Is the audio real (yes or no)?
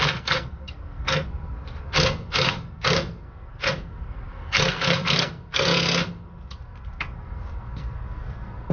no